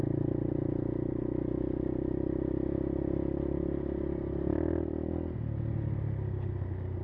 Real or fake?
real